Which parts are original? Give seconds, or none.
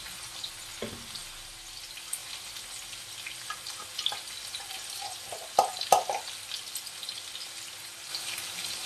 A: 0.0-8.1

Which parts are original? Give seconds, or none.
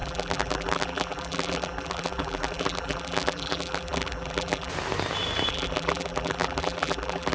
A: 4.7-5.5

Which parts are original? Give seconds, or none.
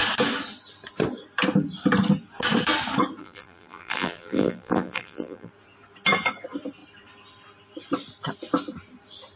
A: 0.0-3.2; 5.5-9.4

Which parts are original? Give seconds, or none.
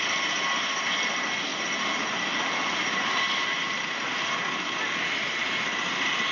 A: 0.0-6.3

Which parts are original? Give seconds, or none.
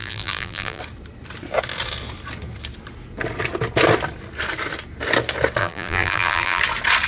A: 0.8-5.6; 6.6-7.1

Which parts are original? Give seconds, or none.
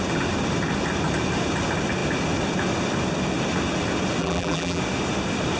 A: 0.0-4.2; 4.8-5.6